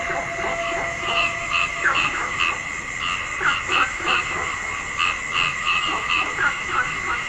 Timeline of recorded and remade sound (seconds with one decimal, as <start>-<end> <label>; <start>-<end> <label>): 0.0-0.5 recorded; 0.5-2.4 remade; 2.4-3.7 recorded; 3.7-4.7 remade; 4.7-5.5 recorded; 5.5-7.3 remade